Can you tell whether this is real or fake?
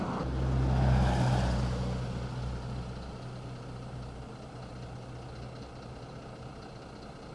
real